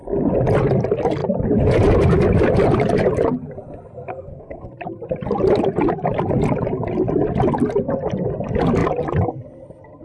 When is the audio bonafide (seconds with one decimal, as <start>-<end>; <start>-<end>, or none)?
0.0-4.1; 4.7-10.0